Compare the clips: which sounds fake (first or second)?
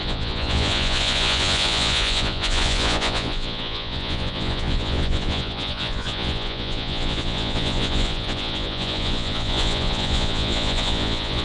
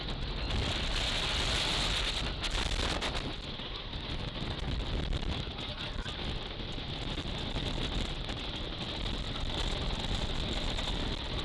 first